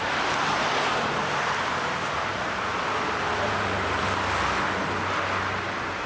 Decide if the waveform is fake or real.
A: real